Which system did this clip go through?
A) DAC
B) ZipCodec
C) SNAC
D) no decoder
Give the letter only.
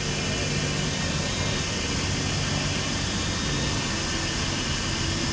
D